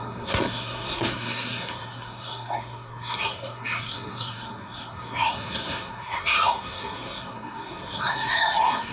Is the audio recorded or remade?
remade